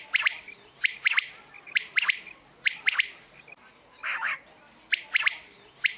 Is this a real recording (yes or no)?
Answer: yes